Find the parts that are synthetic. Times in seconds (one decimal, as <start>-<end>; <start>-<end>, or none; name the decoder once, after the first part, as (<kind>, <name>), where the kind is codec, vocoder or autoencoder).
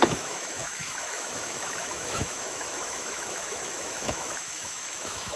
0.0-5.4 (autoencoder, DAC-VAE)